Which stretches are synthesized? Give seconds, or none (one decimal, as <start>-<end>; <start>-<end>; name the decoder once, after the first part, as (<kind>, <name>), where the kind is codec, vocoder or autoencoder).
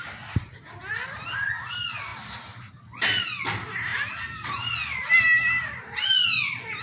none